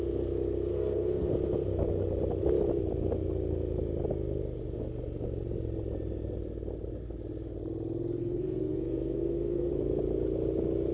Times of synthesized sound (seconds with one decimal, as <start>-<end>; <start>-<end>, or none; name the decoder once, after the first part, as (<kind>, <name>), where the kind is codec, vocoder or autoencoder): 0.7-1.3 (codec, SNAC); 8.2-9.7